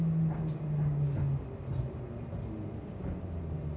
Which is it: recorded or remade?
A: recorded